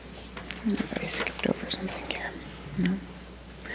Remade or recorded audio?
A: recorded